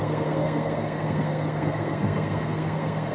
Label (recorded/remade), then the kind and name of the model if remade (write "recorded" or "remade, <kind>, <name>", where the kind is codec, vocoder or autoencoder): remade, codec, SNAC